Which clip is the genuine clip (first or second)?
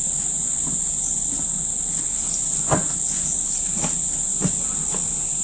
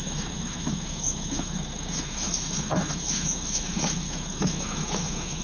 first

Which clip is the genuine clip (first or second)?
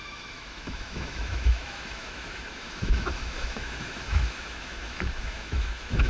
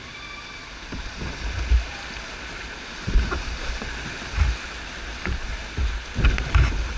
second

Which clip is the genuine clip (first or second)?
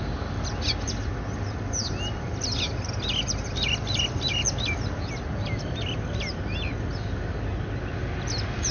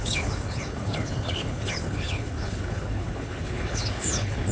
first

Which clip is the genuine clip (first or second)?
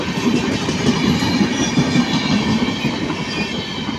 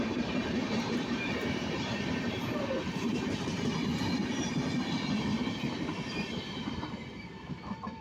first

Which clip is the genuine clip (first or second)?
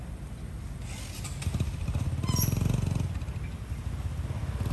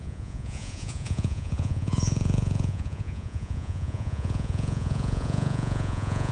first